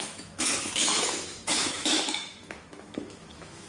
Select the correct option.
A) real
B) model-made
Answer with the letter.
B